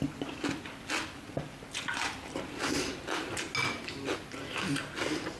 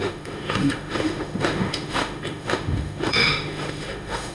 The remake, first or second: second